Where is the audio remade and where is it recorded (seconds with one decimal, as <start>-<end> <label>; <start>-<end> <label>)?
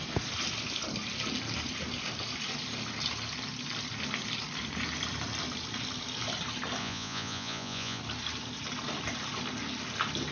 0.0-6.8 recorded; 6.8-8.0 remade; 8.0-10.3 recorded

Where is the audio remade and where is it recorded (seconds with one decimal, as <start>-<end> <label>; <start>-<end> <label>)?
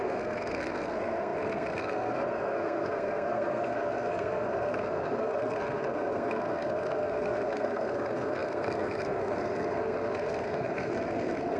0.0-11.6 remade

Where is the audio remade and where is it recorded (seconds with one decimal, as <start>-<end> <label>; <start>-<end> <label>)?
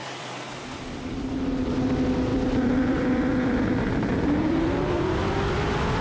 0.0-1.7 remade; 1.7-2.3 recorded; 2.3-5.2 remade; 5.2-6.0 recorded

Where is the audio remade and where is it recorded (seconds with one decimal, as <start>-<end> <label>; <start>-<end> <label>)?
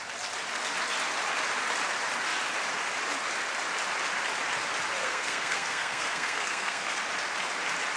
0.0-5.0 recorded; 5.0-7.0 remade; 7.0-8.0 recorded